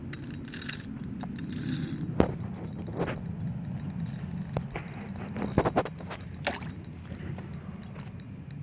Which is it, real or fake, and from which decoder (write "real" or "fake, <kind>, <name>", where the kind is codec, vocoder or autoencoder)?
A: real